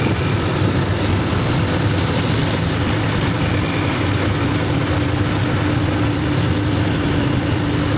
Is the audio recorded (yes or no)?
yes